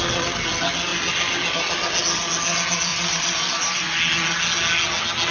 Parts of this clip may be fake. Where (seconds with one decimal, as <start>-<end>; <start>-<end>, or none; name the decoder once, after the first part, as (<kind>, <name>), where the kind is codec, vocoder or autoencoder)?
2.9-3.8 (vocoder, BigVGAN v2)